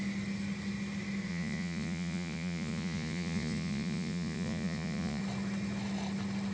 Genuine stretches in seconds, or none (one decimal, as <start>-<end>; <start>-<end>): 0.0-1.3; 5.2-6.5